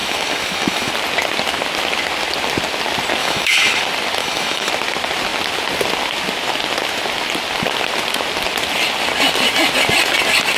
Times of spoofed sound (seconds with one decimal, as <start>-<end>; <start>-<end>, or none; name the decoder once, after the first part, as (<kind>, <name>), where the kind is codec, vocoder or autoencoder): 0.0-0.9 (autoencoder, DAC-VAE); 3.2-3.8; 4.2-4.7